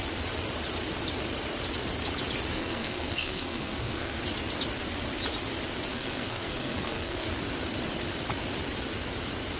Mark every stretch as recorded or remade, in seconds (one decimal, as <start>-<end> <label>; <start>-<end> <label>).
0.0-2.5 recorded; 2.5-4.2 remade; 4.2-5.9 recorded; 5.9-7.3 remade; 7.3-9.6 recorded